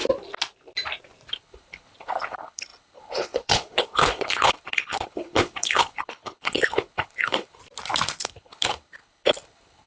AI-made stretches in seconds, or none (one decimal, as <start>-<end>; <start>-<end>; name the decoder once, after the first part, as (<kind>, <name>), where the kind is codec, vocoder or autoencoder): 1.3-7.6 (codec, HILCodec); 8.2-9.9